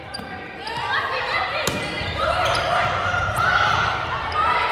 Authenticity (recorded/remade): remade